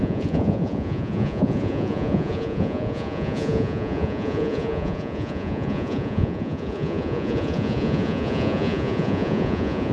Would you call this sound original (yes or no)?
no